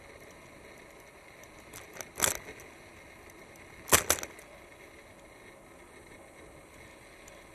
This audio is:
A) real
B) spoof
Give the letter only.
A